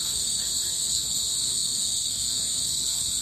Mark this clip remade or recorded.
remade